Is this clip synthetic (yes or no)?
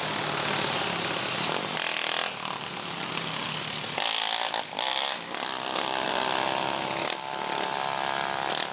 no